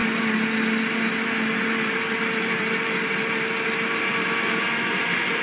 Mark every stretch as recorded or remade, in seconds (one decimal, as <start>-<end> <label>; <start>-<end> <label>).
0.0-5.4 recorded